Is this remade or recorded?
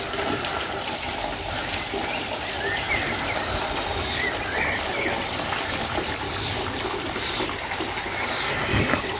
remade